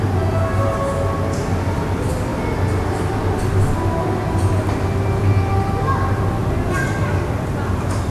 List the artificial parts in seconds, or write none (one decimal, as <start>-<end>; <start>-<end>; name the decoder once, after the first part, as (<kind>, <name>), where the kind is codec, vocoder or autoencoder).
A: none